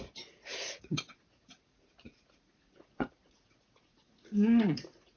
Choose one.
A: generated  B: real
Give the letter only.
A